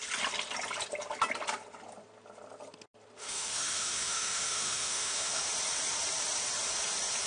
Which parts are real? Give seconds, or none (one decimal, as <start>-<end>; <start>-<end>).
0.0-3.2; 5.4-7.3